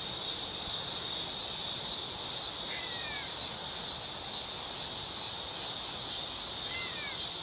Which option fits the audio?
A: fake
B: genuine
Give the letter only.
B